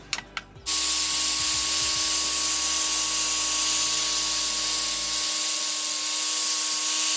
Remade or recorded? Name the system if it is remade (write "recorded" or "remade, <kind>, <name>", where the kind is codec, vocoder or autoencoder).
recorded